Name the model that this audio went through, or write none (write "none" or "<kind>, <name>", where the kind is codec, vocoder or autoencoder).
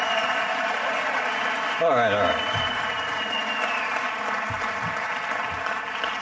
none